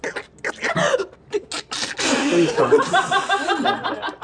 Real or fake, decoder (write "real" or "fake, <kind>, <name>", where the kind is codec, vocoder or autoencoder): real